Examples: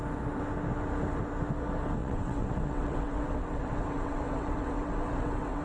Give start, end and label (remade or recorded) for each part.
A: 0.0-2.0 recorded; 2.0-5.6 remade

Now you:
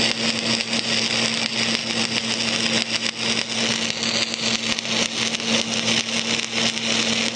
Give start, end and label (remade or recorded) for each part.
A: 0.0-7.4 recorded

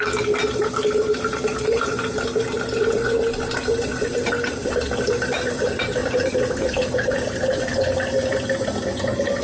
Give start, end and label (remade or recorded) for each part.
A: 0.0-9.4 recorded

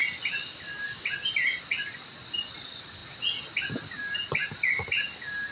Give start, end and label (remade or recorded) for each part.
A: 0.0-5.5 recorded

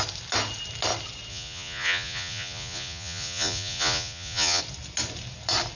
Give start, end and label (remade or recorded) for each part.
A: 0.0-1.3 recorded; 1.3-4.6 remade; 4.6-5.8 recorded

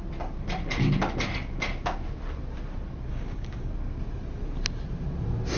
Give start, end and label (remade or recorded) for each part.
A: 0.0-3.1 recorded; 3.1-3.7 remade; 3.7-5.6 recorded